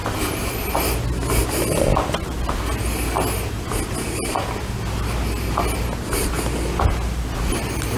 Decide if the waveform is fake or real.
real